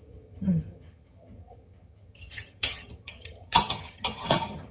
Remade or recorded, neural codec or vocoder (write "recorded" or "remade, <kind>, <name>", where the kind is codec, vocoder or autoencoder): remade, vocoder, HiFi-GAN